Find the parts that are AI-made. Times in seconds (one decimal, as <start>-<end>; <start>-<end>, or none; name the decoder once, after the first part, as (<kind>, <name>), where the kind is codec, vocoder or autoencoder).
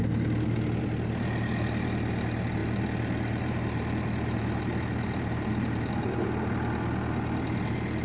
2.6-5.9 (vocoder, BigVGAN v2)